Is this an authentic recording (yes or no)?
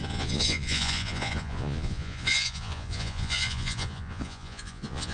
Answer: no